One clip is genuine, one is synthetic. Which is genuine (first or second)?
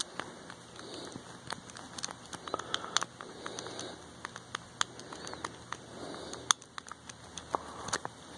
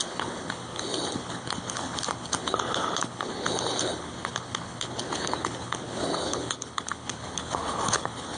first